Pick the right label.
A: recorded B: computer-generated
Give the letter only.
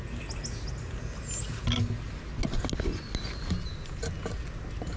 A